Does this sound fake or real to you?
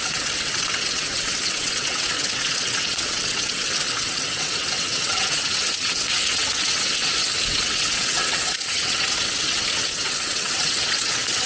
fake